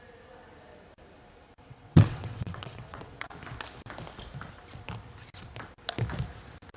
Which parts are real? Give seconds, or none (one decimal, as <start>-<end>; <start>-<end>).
0.0-1.6; 3.3-6.8